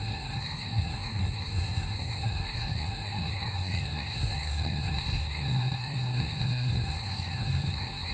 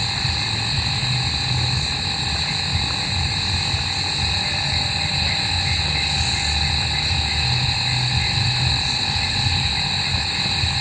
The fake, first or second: first